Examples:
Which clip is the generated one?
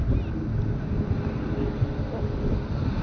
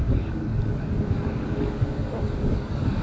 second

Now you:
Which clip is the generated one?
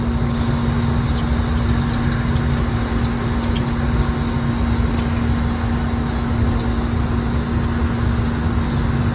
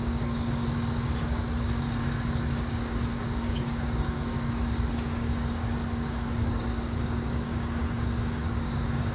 second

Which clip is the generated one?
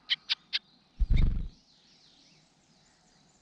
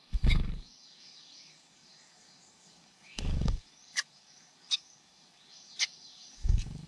second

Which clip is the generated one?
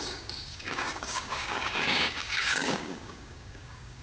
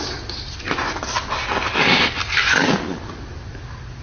first